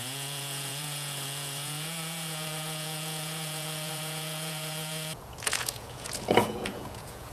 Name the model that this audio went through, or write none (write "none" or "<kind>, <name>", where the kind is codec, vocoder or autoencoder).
vocoder, Vocos